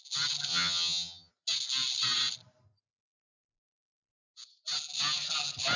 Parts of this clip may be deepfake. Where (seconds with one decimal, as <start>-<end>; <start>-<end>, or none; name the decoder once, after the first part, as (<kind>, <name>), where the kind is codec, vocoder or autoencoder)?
0.5-1.3 (vocoder, HiFi-GAN)